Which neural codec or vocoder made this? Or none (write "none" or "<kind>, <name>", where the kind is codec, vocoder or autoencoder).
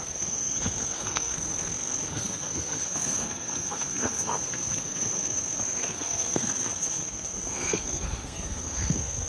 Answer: codec, SNAC